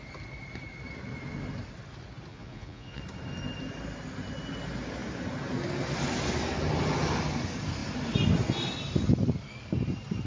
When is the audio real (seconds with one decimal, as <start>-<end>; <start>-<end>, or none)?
0.0-2.3; 3.0-10.3